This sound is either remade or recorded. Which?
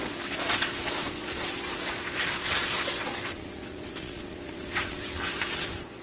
remade